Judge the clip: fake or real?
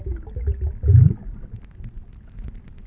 real